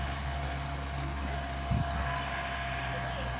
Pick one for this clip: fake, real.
real